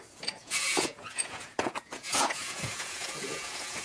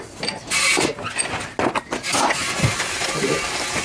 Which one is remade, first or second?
first